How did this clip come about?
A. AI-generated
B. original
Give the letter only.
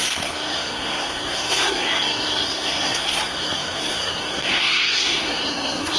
A